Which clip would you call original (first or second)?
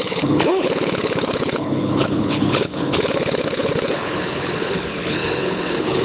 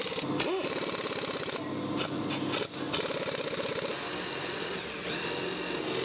second